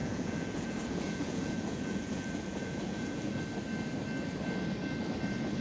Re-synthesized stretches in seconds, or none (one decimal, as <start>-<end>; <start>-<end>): 0.0-3.4